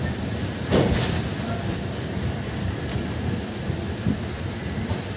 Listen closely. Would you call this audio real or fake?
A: real